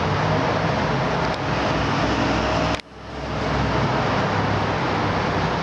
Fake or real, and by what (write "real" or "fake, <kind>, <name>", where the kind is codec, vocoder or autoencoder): real